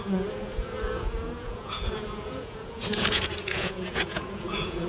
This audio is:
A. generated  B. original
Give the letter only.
A